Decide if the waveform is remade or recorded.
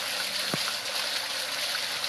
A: recorded